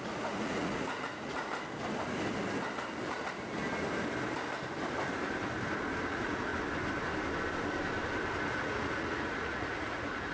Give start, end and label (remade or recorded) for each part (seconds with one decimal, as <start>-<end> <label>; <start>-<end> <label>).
0.0-1.5 remade; 1.5-6.1 recorded; 6.1-6.5 remade; 6.5-8.5 recorded; 8.5-10.3 remade